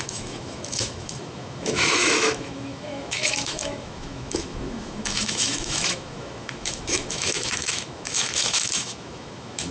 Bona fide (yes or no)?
no